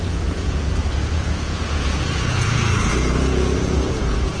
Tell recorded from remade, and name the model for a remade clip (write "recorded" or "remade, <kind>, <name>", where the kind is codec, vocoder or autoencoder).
remade, vocoder, Vocos